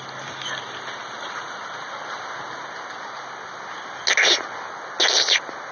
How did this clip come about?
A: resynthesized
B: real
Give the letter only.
B